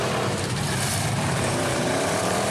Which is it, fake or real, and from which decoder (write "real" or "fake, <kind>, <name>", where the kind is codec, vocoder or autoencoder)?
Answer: fake, vocoder, BigVGAN v2